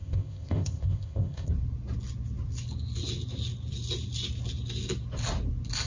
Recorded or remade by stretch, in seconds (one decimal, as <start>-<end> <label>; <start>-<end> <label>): 0.0-1.5 remade; 1.5-5.9 recorded

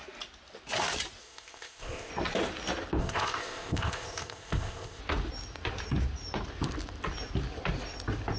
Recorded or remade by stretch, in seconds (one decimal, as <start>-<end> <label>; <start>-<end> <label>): 0.0-1.2 recorded; 1.2-2.1 remade; 2.1-3.0 recorded; 3.0-5.0 remade; 5.0-8.4 recorded

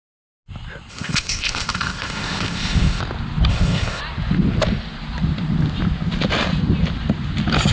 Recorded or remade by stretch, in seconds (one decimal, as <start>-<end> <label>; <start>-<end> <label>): 0.0-0.9 recorded; 0.9-3.0 remade; 3.0-3.5 recorded; 3.5-4.0 remade; 4.0-7.7 recorded